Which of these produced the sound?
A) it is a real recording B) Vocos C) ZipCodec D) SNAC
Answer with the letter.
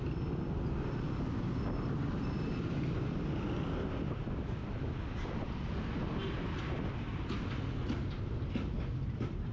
A